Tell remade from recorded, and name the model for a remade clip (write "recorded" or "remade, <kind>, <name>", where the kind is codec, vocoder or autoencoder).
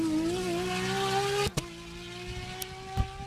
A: recorded